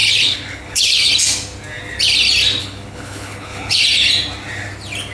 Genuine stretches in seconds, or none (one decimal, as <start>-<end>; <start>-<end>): 1.1-2.6; 3.8-5.1